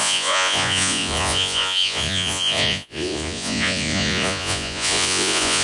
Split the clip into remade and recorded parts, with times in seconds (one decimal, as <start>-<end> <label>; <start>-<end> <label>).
0.0-5.6 remade